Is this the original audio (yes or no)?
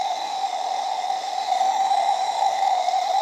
no